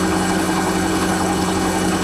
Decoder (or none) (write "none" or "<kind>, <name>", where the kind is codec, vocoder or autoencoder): codec, HILCodec